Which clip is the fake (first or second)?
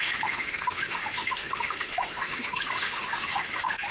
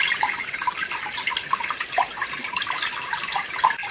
first